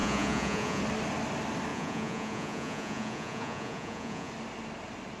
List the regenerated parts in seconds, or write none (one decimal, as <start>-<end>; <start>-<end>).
0.0-0.8; 1.7-4.3